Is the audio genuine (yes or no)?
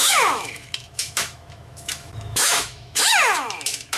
no